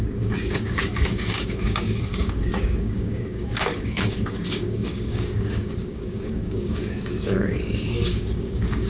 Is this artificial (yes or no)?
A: yes